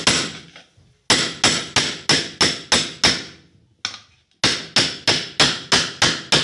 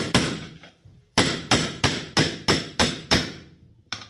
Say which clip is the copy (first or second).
second